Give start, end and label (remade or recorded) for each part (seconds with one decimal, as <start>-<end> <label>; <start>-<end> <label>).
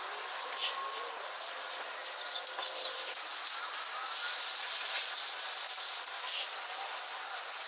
0.0-7.7 recorded